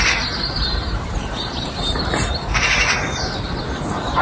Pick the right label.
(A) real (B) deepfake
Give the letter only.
B